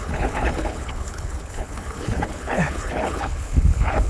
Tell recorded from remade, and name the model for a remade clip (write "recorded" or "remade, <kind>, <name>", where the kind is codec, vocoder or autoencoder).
remade, codec, HILCodec